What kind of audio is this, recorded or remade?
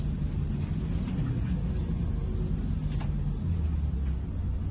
recorded